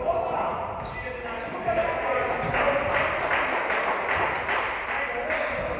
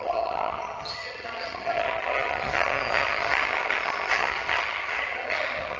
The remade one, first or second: second